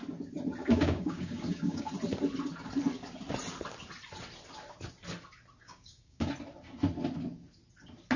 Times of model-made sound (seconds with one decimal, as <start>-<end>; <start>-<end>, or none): 0.6-1.9; 5.6-6.3